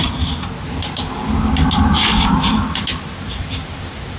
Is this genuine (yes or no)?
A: yes